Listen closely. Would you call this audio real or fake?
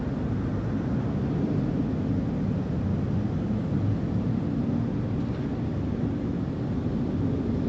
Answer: real